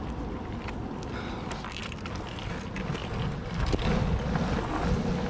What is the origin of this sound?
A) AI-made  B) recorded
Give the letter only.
B